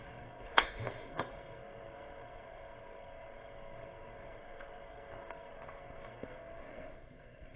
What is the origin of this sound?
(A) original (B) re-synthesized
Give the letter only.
B